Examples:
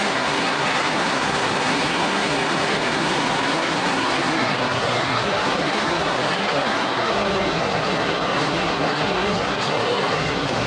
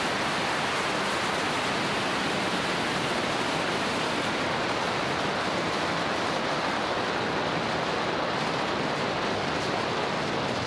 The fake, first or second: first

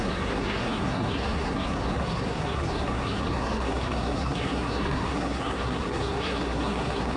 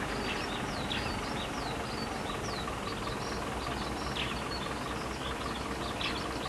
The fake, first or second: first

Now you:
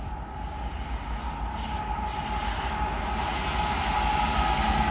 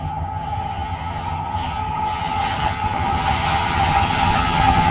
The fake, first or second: second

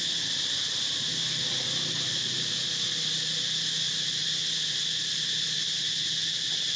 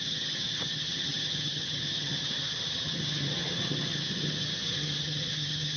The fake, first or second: second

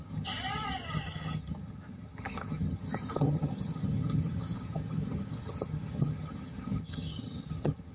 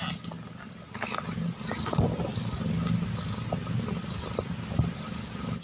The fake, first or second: first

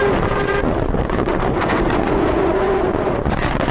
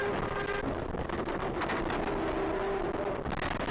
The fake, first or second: first